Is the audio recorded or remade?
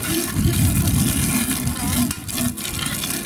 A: recorded